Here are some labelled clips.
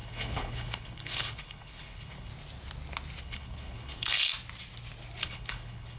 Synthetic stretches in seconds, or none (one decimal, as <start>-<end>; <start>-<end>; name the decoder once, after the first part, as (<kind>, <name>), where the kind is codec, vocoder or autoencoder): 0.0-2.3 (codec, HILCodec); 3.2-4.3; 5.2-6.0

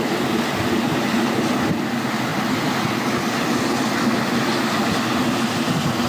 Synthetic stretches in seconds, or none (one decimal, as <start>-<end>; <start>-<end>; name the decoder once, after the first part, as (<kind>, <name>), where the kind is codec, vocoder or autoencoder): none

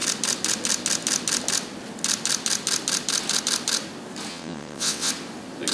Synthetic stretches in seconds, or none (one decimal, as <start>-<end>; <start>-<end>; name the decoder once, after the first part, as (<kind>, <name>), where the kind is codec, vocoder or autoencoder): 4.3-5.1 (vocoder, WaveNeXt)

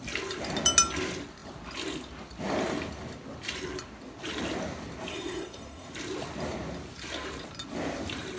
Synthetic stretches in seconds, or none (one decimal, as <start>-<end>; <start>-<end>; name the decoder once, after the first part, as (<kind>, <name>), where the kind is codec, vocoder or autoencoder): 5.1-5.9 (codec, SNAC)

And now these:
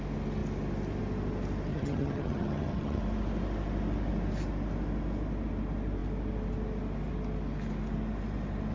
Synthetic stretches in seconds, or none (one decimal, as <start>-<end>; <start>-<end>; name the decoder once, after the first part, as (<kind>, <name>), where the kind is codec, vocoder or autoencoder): 1.7-3.0 (vocoder, HiFi-GAN)